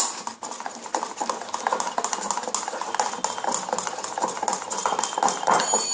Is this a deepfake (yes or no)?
no